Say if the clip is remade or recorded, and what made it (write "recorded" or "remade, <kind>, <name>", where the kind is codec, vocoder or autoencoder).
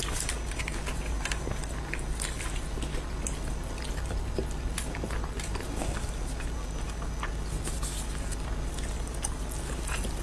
recorded